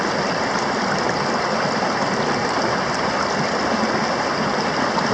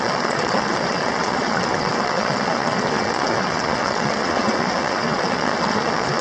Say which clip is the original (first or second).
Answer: first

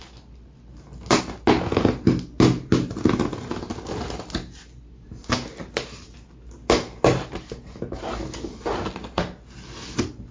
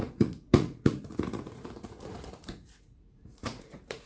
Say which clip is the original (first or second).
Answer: first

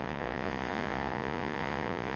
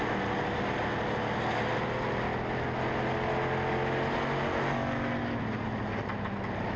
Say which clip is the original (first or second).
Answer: second